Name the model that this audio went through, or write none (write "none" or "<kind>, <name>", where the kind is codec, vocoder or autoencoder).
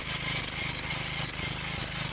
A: none